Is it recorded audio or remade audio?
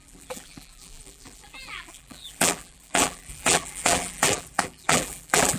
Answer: remade